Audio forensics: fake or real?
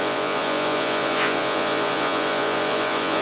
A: fake